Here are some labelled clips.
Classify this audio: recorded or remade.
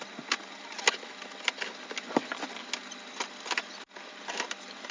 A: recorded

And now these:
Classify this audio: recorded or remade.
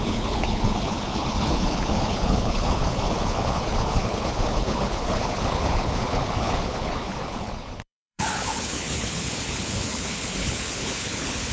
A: remade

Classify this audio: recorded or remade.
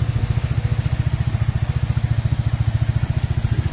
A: recorded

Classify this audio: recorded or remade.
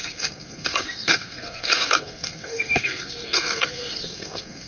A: remade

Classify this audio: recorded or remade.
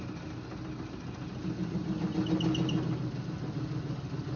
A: recorded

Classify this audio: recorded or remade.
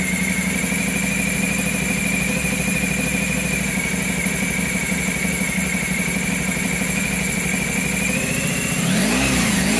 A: recorded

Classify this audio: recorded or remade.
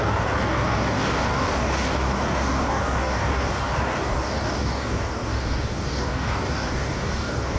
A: remade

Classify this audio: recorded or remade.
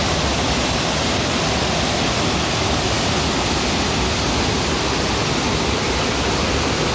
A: recorded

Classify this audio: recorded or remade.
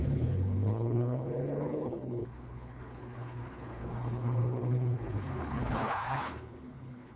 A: remade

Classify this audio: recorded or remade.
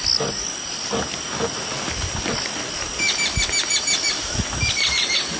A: recorded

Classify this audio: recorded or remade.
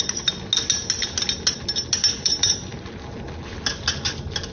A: recorded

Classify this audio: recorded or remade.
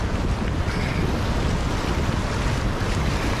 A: recorded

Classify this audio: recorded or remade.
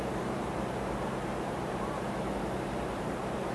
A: remade